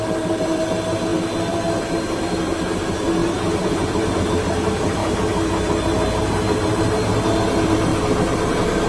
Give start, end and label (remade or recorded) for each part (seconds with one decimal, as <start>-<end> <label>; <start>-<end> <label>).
0.0-8.9 recorded